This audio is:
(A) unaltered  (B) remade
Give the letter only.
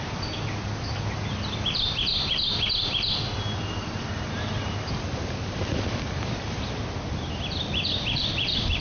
A